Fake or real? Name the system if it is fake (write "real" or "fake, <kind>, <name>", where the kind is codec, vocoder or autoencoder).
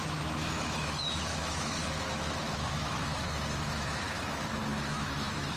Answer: fake, autoencoder, DAC-VAE